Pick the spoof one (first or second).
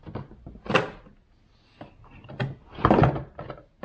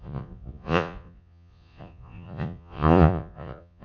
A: second